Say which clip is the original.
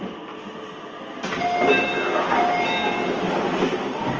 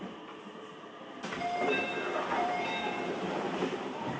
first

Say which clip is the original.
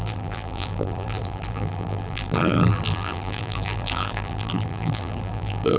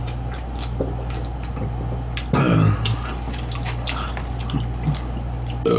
second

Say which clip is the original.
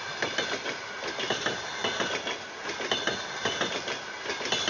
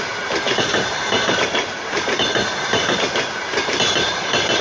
first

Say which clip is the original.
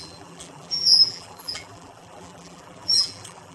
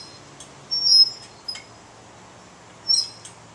second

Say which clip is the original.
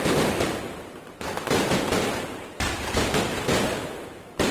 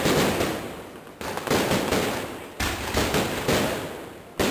second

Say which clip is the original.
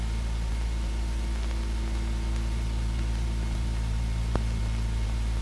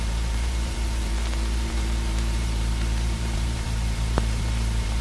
first